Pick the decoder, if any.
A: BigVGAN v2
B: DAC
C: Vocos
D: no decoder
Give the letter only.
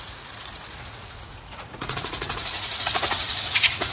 C